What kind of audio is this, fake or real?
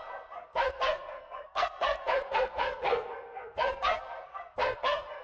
fake